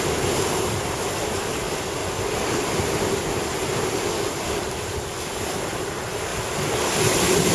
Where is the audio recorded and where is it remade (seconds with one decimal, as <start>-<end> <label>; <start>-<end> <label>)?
0.0-2.0 recorded; 2.0-3.5 remade; 3.5-7.5 recorded